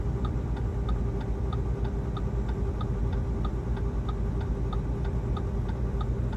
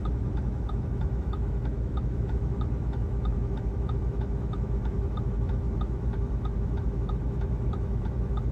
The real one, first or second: first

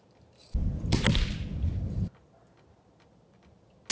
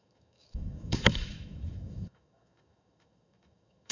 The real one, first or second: first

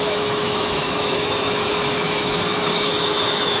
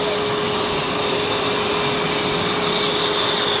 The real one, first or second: second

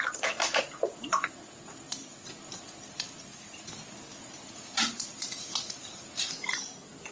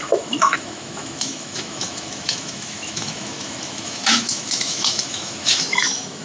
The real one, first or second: first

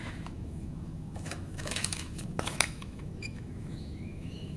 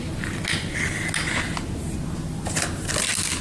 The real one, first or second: second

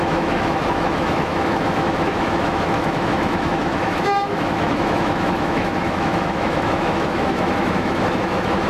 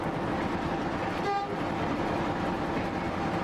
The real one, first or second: second